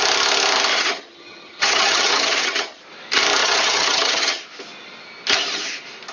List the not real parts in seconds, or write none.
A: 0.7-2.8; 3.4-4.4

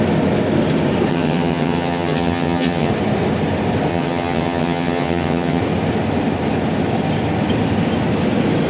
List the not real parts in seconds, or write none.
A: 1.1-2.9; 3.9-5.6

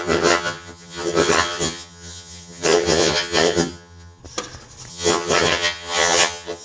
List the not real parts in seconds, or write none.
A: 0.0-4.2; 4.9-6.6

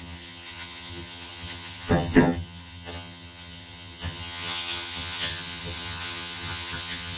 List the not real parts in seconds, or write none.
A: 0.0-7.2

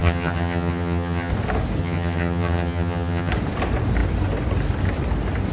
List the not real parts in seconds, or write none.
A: 0.0-1.3; 1.8-3.3

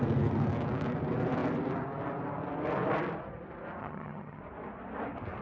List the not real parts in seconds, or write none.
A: 3.8-4.4

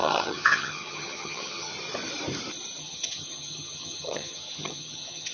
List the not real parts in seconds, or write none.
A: 0.0-1.7; 2.8-5.3